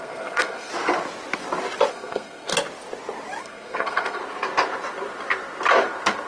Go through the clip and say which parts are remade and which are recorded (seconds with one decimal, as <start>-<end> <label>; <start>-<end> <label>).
0.0-0.7 remade; 0.7-1.9 recorded; 1.9-2.5 remade; 2.5-3.4 recorded; 3.4-4.2 remade; 4.2-6.3 recorded